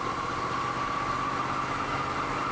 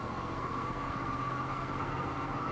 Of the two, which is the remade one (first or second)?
second